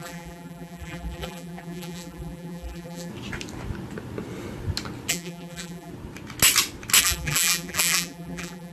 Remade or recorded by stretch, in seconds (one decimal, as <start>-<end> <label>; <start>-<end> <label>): 0.0-3.1 remade; 3.1-5.1 recorded; 5.1-5.9 remade; 5.9-7.0 recorded; 7.0-8.7 remade